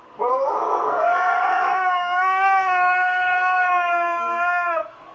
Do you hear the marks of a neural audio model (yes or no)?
yes